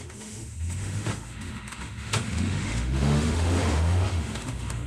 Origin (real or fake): fake